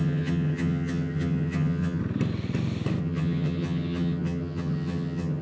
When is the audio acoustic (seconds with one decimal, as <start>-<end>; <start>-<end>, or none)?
2.0-3.0